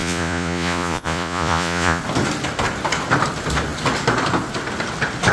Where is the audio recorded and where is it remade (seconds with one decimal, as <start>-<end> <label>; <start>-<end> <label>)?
0.0-2.0 remade; 2.0-5.3 recorded